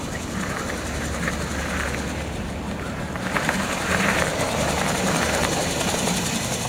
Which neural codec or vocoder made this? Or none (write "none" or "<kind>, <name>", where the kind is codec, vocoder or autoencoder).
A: vocoder, BigVGAN v2